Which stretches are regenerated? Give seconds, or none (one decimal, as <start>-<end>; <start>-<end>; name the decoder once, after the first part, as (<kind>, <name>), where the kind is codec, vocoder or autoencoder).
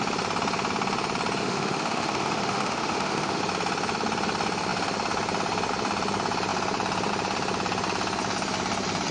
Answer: 1.4-3.4 (autoencoder, DAC-VAE)